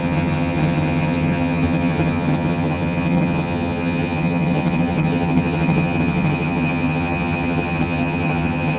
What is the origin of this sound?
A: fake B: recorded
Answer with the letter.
A